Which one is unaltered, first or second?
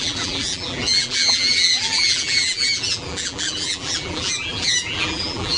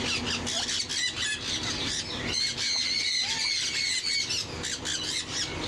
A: second